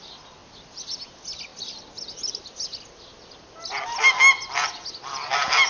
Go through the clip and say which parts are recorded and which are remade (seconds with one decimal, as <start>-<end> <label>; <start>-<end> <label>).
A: 0.0-5.7 recorded